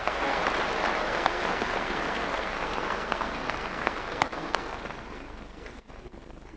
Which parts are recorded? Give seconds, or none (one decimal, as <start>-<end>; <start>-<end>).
0.4-1.0